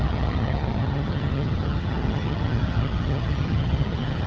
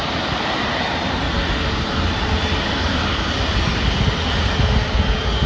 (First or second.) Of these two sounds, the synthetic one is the first